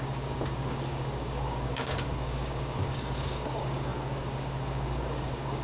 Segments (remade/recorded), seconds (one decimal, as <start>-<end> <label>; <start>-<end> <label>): 0.0-5.6 remade